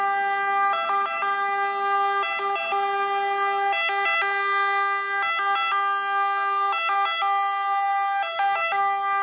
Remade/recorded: recorded